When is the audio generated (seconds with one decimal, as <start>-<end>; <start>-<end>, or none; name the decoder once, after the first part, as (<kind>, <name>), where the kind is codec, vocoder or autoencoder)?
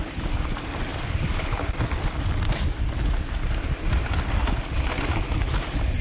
0.9-2.8 (vocoder, BigVGAN v2)